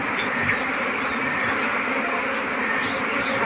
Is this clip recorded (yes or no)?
yes